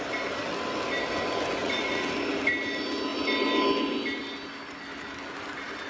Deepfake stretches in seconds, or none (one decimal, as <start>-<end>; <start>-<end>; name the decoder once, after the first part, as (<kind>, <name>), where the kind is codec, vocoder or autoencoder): 1.6-2.1 (vocoder, Vocos)